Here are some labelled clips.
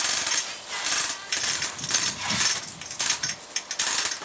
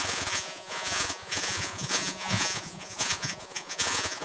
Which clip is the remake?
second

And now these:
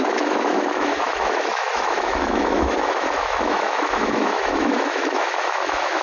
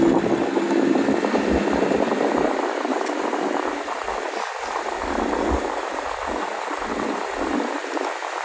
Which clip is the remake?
first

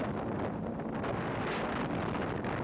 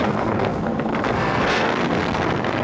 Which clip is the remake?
second